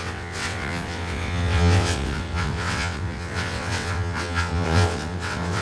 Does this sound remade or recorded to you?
remade